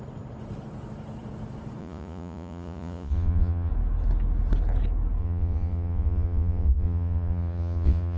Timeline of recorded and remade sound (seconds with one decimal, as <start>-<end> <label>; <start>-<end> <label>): 0.0-1.8 recorded; 1.8-3.7 remade; 3.7-5.2 recorded; 5.2-8.2 remade